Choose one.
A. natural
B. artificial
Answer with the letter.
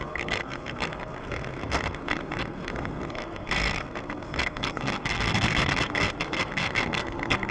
B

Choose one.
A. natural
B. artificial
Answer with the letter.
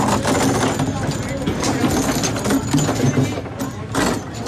A